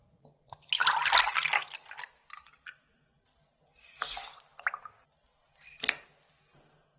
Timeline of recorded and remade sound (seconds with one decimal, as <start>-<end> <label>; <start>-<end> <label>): 0.0-7.0 recorded